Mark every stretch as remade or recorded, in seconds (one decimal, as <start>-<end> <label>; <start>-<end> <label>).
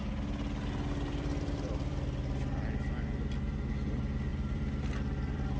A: 0.0-1.1 recorded; 1.1-2.0 remade; 2.0-4.3 recorded; 4.3-5.6 remade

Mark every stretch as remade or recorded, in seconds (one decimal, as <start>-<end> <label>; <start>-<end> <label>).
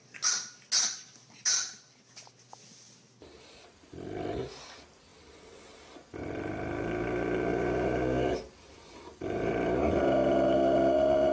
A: 0.0-7.5 recorded; 7.5-9.5 remade; 9.5-11.3 recorded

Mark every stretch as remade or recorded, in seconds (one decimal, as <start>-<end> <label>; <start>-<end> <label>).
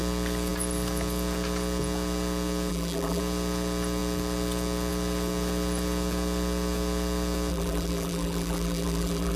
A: 0.0-2.7 recorded; 2.7-3.2 remade; 3.2-7.5 recorded; 7.5-9.4 remade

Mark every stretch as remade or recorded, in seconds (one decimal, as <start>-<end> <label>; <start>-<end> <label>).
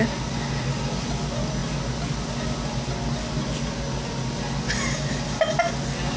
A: 0.0-6.2 recorded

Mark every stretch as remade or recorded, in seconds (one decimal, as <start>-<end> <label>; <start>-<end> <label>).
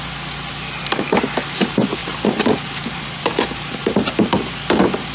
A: 0.0-2.0 recorded; 2.0-4.3 remade; 4.3-5.1 recorded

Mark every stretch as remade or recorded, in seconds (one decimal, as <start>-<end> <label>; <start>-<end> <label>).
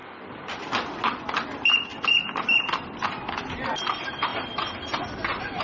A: 0.0-1.2 recorded; 1.2-1.9 remade; 1.9-3.3 recorded; 3.3-4.3 remade; 4.3-5.6 recorded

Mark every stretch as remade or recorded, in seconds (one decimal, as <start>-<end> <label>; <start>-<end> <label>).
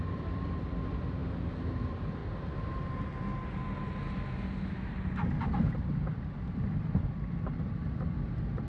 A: 0.0-1.2 remade; 1.2-1.8 recorded; 1.8-2.2 remade; 2.2-6.6 recorded; 6.6-8.7 remade